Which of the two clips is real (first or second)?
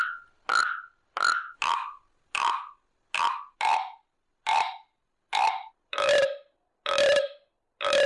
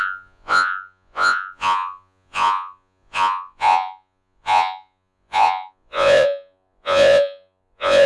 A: first